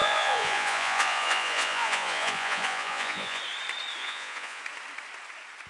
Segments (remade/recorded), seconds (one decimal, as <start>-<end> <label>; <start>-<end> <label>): 0.0-3.4 remade; 3.4-4.0 recorded; 4.0-4.6 remade; 4.6-5.7 recorded